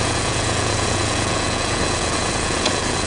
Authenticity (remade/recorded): remade